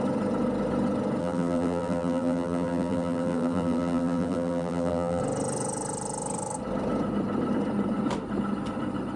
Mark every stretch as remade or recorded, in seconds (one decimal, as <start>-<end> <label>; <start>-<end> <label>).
0.0-1.2 recorded; 1.2-5.2 remade; 5.2-9.2 recorded